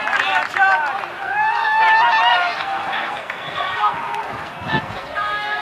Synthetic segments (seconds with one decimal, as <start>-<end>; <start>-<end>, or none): 1.2-1.8; 2.3-5.6